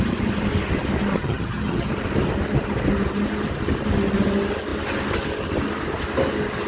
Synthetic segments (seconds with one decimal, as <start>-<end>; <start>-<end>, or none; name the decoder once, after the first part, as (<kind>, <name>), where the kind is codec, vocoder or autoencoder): 1.1-1.9 (vocoder, HiFi-GAN)